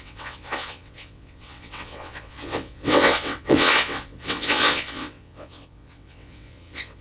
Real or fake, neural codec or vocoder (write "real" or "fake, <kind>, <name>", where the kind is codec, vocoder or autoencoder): fake, vocoder, WaveNeXt